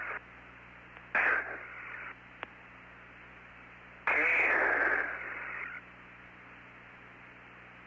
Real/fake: real